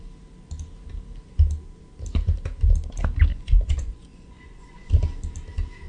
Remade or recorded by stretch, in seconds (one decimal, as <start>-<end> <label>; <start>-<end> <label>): 0.0-3.3 recorded; 3.3-4.9 remade; 4.9-5.9 recorded